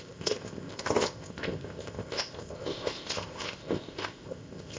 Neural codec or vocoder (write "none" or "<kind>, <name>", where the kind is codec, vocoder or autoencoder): codec, ZipCodec